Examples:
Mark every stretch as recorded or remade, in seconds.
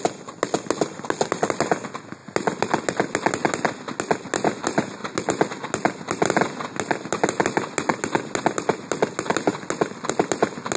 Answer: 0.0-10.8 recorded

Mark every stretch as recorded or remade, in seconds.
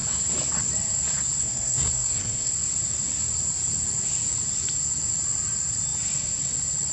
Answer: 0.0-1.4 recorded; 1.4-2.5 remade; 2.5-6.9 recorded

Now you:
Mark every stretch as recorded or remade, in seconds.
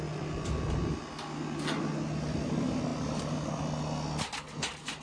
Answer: 0.0-5.0 recorded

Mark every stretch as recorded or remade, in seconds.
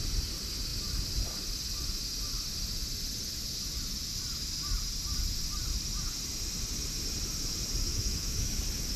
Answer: 0.0-7.9 recorded; 7.9-8.6 remade; 8.6-9.0 recorded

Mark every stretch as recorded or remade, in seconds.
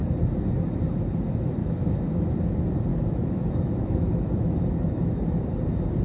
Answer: 0.0-1.6 recorded; 1.6-2.3 remade; 2.3-2.9 recorded; 2.9-5.1 remade; 5.1-6.0 recorded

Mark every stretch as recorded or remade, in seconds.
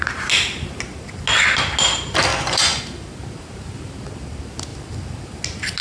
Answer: 0.0-2.3 recorded; 2.3-2.8 remade; 2.8-5.8 recorded